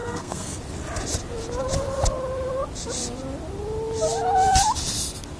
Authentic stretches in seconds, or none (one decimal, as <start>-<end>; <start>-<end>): 0.6-5.4